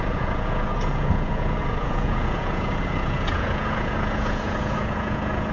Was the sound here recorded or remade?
remade